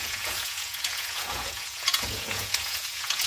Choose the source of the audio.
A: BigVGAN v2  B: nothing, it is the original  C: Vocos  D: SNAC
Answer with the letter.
C